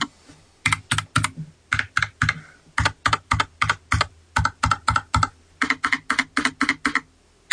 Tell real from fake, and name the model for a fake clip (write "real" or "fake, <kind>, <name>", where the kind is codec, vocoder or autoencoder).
real